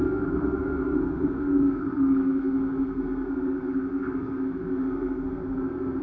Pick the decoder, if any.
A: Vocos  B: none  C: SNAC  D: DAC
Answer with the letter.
C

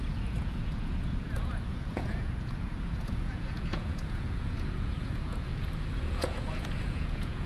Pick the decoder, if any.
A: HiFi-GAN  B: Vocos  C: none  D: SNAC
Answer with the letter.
B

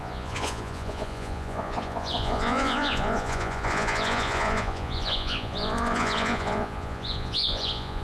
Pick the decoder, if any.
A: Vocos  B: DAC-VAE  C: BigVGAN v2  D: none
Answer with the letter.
A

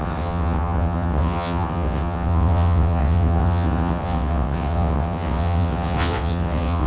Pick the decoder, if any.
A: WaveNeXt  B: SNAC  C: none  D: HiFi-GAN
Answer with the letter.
A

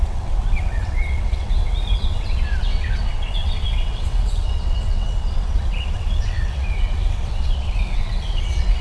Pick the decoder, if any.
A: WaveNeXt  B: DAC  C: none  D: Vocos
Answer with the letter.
A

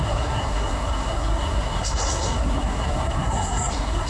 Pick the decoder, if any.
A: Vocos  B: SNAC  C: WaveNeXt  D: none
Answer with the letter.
B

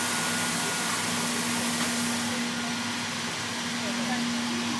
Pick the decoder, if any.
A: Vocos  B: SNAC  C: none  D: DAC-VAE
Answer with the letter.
C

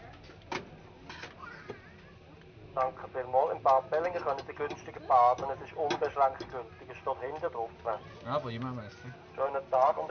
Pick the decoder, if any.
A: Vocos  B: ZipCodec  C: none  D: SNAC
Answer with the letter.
C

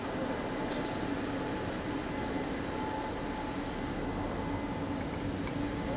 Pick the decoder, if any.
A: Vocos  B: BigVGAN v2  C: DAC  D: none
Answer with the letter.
D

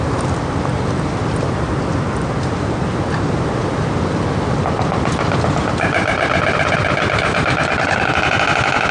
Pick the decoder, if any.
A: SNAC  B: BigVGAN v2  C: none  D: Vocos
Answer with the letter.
C